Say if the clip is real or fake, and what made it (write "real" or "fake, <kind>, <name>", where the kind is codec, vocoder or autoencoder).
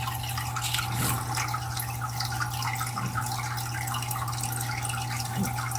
real